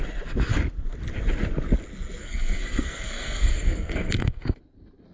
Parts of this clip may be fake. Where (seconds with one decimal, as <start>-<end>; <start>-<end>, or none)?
2.2-4.6